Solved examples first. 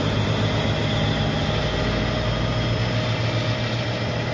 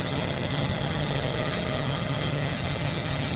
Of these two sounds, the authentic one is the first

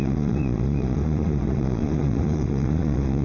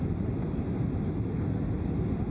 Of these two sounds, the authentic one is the second